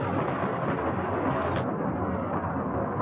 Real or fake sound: real